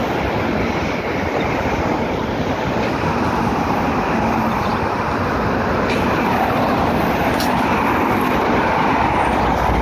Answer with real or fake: real